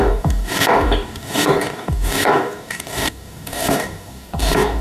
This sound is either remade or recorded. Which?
remade